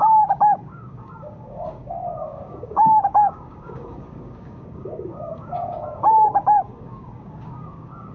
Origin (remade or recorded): remade